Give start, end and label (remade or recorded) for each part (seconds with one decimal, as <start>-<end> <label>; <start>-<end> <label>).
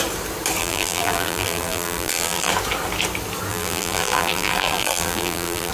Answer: 0.0-0.6 recorded; 0.6-2.5 remade; 2.5-3.5 recorded; 3.5-5.7 remade